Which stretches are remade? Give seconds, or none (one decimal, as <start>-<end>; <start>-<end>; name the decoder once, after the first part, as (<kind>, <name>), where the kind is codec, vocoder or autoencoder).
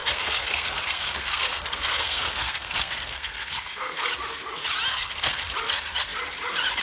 0.0-4.1 (codec, SNAC); 4.9-5.5